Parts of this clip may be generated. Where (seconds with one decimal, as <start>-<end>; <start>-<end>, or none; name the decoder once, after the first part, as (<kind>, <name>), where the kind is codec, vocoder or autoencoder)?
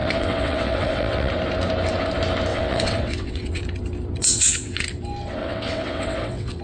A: 0.0-1.3 (vocoder, WaveNeXt); 2.5-3.6; 4.2-4.8; 5.4-6.6